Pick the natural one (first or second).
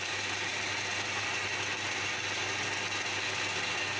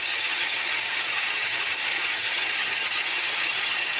first